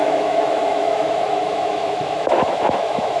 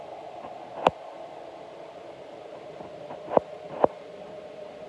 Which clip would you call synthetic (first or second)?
first